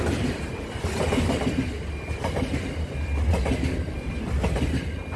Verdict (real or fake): real